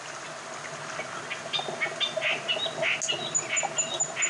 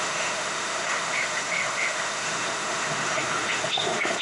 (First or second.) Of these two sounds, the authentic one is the first